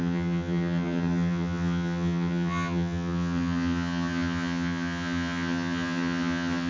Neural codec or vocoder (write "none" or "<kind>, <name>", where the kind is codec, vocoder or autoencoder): vocoder, HiFi-GAN